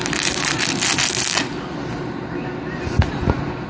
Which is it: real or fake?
real